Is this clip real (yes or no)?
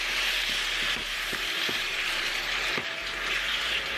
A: no